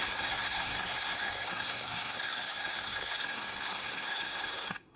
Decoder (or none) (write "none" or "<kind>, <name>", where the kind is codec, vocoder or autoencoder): codec, SNAC